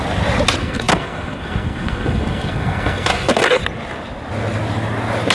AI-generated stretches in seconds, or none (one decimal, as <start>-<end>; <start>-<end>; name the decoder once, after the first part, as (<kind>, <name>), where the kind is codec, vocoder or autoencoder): 0.6-3.6 (codec, SNAC)